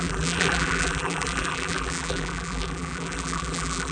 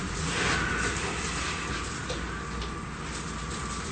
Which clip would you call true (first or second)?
second